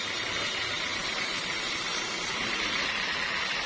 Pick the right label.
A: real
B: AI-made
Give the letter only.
A